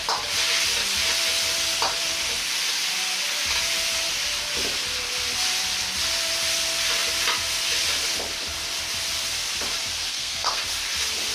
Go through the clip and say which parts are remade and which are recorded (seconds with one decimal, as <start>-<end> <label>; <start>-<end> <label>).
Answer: 0.0-10.1 recorded; 10.1-10.6 remade; 10.6-11.3 recorded